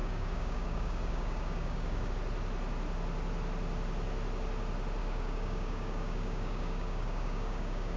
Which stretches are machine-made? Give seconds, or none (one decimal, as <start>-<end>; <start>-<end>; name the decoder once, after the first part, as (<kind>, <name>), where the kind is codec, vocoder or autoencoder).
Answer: 0.0-2.1 (codec, DAC); 5.0-8.0